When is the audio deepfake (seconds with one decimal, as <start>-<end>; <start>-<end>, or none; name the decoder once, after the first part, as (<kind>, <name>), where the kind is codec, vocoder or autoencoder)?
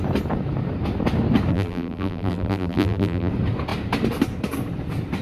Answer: 1.5-3.3 (vocoder, BigVGAN v2)